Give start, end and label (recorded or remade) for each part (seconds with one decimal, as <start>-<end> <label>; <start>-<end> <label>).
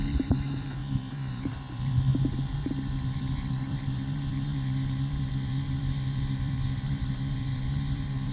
0.0-8.3 remade